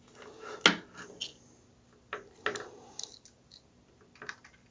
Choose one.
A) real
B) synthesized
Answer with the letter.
A